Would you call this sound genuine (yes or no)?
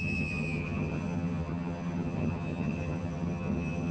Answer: no